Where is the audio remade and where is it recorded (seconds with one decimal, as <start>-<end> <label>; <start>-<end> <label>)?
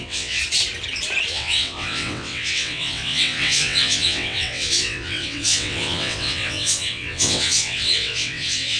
0.0-0.4 remade; 0.4-1.3 recorded; 1.3-8.8 remade